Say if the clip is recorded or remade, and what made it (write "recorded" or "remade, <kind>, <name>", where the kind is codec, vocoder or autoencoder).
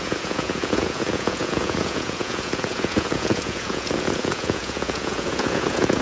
remade, vocoder, Vocos